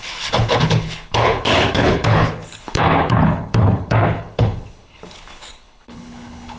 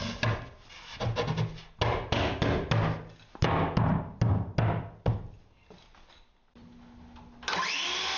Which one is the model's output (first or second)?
first